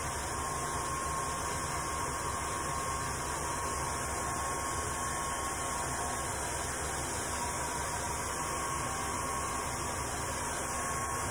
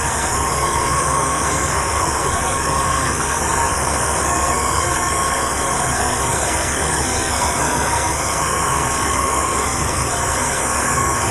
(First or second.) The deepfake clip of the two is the second